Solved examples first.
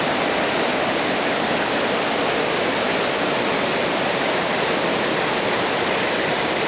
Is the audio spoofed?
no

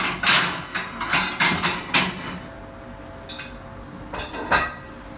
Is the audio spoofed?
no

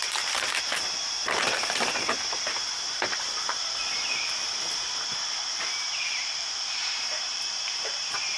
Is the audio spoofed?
yes